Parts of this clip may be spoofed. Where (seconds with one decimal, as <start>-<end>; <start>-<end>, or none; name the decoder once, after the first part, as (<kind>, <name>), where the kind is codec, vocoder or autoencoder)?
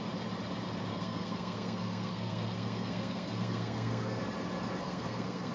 0.9-4.2 (codec, SNAC); 4.8-5.5